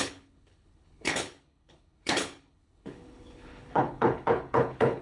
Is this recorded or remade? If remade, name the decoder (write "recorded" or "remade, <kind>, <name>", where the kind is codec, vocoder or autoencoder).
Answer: remade, codec, HILCodec